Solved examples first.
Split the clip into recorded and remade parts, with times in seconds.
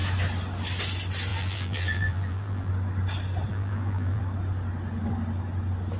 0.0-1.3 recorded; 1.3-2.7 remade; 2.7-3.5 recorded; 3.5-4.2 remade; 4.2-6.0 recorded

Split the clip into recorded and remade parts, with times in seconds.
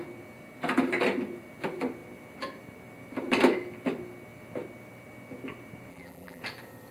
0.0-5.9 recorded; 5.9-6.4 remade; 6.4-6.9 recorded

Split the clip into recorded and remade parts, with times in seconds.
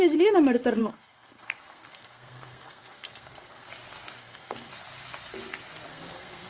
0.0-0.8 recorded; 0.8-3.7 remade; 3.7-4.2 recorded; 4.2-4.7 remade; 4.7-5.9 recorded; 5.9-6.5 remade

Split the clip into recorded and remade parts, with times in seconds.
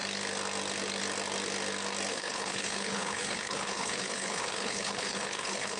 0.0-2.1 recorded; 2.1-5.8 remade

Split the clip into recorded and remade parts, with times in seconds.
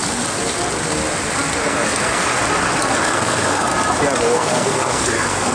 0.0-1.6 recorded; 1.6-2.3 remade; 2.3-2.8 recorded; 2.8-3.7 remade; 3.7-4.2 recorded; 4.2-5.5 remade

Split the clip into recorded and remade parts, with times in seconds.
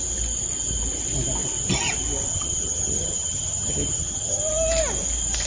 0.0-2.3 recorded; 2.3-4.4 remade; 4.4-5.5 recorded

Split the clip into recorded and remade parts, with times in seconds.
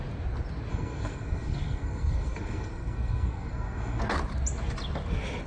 0.0-0.7 recorded; 0.7-4.0 remade; 4.0-5.5 recorded